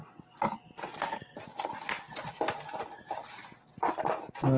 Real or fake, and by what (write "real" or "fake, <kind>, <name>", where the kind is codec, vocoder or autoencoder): real